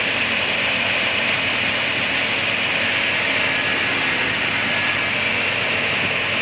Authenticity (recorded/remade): recorded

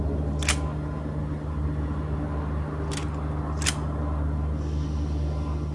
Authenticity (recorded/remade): recorded